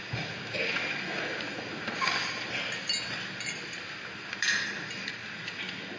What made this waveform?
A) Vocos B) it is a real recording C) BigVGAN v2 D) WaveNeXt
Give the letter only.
B